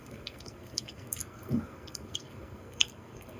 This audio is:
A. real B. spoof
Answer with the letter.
B